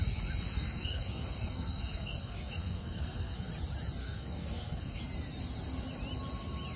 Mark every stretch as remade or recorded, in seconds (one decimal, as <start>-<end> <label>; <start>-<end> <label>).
0.0-0.5 recorded; 0.5-3.5 remade; 3.5-4.0 recorded; 4.0-5.0 remade; 5.0-6.8 recorded